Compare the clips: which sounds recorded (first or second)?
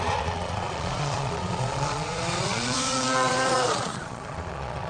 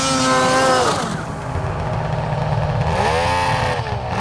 second